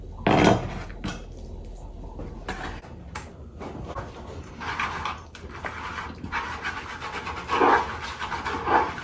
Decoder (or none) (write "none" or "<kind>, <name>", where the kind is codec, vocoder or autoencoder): none